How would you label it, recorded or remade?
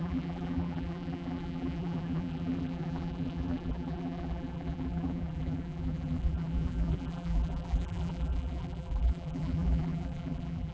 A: remade